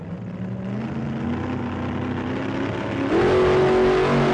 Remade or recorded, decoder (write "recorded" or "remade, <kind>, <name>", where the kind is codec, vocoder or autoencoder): recorded